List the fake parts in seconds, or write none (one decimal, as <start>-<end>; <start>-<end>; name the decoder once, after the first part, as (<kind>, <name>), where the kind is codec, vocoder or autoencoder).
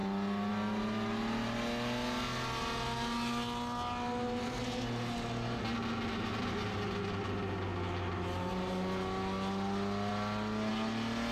none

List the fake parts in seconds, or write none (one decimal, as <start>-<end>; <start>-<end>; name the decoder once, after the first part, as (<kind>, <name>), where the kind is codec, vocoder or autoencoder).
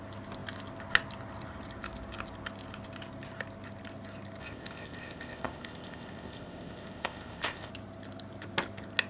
4.4-7.7 (codec, ZipCodec)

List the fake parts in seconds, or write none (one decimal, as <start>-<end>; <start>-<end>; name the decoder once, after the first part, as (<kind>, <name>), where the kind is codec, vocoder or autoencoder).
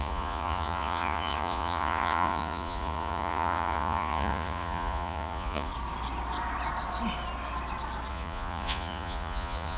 0.0-5.7 (vocoder, Vocos); 8.1-9.8